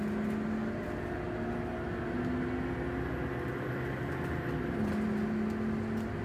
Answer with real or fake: real